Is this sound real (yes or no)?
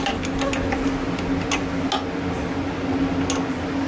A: yes